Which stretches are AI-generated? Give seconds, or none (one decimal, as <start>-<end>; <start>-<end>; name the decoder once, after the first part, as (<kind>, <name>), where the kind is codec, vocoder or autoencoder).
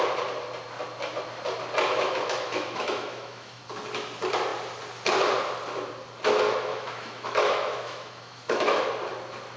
1.9-3.6 (autoencoder, DAC-VAE); 6.7-8.9